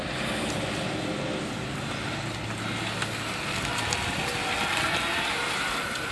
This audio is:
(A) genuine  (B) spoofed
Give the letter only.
A